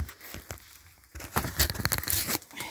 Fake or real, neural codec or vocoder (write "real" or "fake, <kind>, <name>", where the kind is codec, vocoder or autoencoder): real